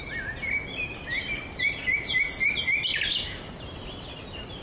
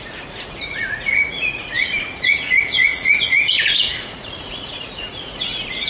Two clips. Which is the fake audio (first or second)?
second